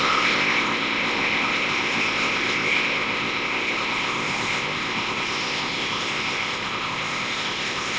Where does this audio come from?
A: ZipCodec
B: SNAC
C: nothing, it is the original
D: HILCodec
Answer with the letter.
A